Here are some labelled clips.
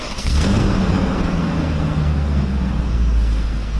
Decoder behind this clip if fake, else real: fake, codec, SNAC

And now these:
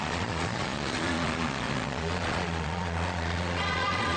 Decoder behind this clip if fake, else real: fake, vocoder, Vocos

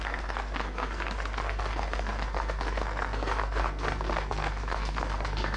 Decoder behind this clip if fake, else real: fake, codec, SNAC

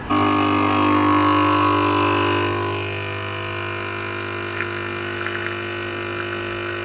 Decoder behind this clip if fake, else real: real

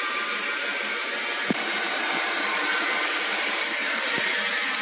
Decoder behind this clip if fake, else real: fake, vocoder, BigVGAN v2